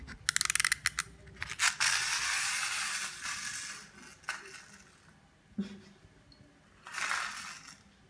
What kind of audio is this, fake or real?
real